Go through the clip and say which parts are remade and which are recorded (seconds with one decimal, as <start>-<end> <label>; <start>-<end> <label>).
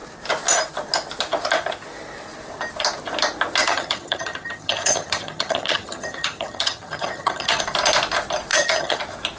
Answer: 0.0-3.6 recorded; 3.6-7.6 remade; 7.6-8.5 recorded; 8.5-9.0 remade; 9.0-9.4 recorded